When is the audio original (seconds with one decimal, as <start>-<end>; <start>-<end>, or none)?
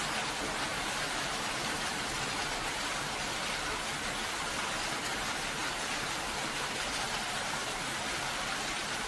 0.0-0.7; 2.8-5.6; 6.8-7.6; 8.2-9.1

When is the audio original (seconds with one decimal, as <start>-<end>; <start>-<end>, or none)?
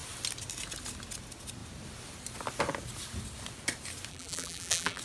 0.0-4.1